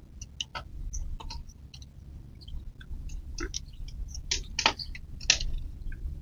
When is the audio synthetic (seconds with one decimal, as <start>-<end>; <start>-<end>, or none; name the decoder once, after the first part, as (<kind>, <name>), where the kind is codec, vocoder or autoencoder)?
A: none